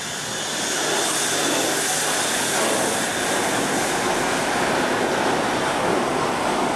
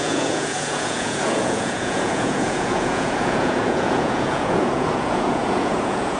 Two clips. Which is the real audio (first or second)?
first